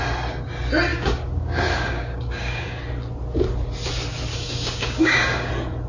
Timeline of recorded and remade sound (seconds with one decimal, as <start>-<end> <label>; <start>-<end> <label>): 0.0-0.9 recorded; 0.9-2.8 remade; 2.8-4.3 recorded; 4.3-5.5 remade; 5.5-5.9 recorded

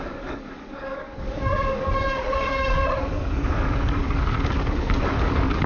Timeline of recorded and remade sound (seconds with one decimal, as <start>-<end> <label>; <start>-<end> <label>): 0.0-5.7 remade

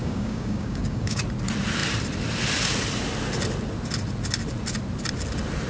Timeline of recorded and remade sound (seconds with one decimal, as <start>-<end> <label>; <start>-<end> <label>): 0.0-1.2 remade; 1.2-5.7 recorded

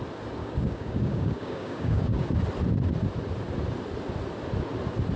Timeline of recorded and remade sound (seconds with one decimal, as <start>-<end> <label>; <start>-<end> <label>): 0.0-0.4 recorded; 0.4-2.2 remade; 2.2-5.2 recorded

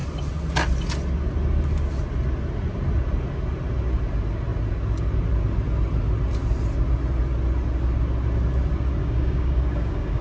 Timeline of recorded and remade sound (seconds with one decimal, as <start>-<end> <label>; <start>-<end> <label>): 0.0-9.0 recorded; 9.0-10.2 remade